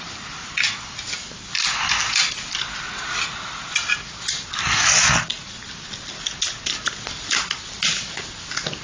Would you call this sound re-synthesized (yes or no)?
no